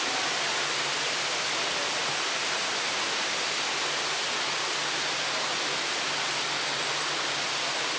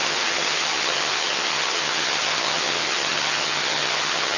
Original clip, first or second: first